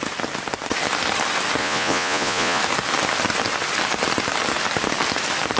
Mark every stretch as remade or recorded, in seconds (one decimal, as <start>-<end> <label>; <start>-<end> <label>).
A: 0.0-1.6 recorded; 1.6-2.6 remade; 2.6-5.6 recorded